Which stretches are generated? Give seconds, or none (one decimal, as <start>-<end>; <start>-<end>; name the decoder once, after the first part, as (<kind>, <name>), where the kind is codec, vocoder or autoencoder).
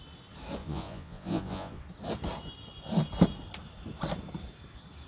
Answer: 0.6-1.8 (vocoder, Vocos)